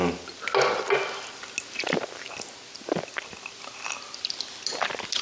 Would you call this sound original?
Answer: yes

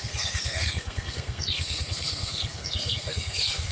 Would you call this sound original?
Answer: no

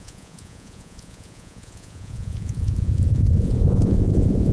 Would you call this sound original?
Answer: no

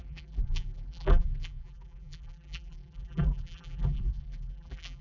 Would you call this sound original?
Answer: no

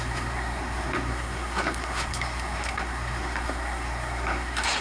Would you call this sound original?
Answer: no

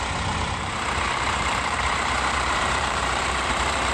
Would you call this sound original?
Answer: no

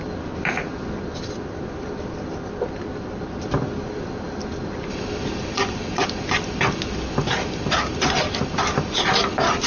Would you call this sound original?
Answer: yes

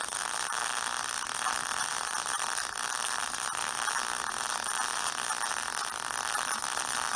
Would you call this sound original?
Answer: yes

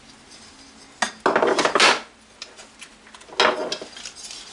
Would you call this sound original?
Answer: yes